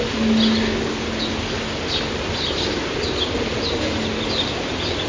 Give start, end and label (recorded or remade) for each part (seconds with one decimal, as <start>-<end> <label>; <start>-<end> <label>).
0.0-5.1 recorded